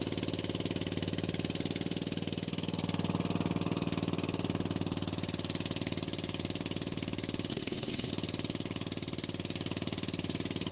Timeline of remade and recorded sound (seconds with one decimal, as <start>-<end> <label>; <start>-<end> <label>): 0.0-7.5 recorded; 7.5-8.1 remade; 8.1-10.7 recorded